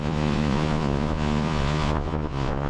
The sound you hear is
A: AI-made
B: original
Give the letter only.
A